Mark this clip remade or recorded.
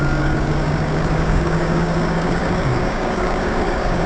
remade